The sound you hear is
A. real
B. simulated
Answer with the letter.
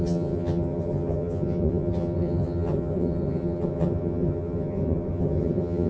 B